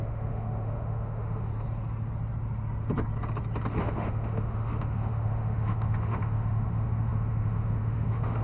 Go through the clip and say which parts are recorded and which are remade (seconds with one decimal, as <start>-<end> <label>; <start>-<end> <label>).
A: 0.0-1.5 remade; 1.5-3.8 recorded; 3.8-8.4 remade